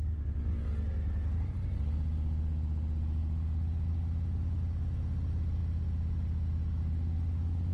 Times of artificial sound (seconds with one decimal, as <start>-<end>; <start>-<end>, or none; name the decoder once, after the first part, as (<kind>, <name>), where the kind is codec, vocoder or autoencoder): none